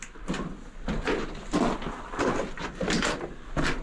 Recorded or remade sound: recorded